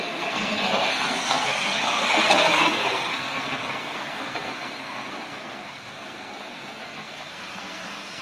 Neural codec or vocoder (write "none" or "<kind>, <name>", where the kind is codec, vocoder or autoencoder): codec, SNAC